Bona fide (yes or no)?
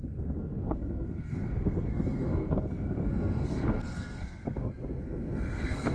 no